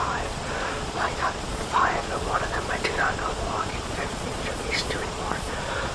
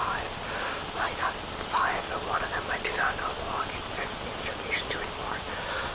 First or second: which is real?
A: second